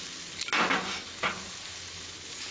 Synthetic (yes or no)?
no